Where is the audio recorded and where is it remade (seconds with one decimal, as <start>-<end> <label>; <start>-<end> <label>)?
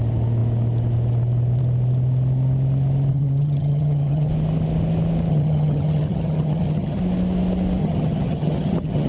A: 0.0-3.1 recorded; 3.1-4.3 remade; 4.3-5.3 recorded; 5.3-7.0 remade; 7.0-7.8 recorded; 7.8-9.1 remade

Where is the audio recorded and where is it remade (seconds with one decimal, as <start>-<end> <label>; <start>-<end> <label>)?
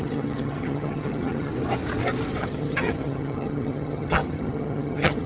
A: 0.0-1.5 remade; 1.5-2.4 recorded; 2.4-5.3 remade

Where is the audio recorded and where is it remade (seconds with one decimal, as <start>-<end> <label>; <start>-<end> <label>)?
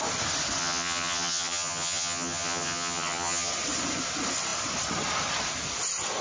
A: 0.0-0.6 recorded; 0.6-3.5 remade; 3.5-6.2 recorded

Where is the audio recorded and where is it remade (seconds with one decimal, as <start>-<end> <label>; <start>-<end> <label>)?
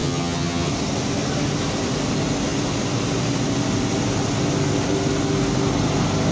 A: 0.0-0.7 remade; 0.7-6.3 recorded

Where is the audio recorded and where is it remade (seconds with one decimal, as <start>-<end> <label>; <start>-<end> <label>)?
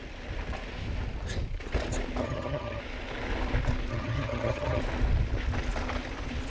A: 0.0-2.2 recorded; 2.2-2.8 remade; 2.8-3.9 recorded; 3.9-4.8 remade; 4.8-6.5 recorded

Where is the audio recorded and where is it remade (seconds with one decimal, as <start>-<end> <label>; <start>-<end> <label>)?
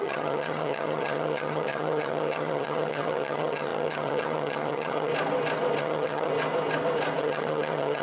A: 0.0-5.1 remade; 5.1-5.8 recorded; 5.8-6.3 remade; 6.3-7.2 recorded; 7.2-8.0 remade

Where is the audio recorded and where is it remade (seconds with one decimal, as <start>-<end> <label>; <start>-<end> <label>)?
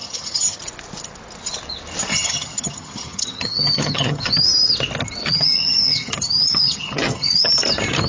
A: 0.0-0.6 remade; 0.6-2.1 recorded; 2.1-4.4 remade; 4.4-5.2 recorded; 5.2-7.5 remade; 7.5-8.1 recorded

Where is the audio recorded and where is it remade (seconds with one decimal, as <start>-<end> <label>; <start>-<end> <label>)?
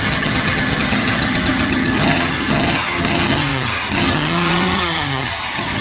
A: 0.0-5.8 remade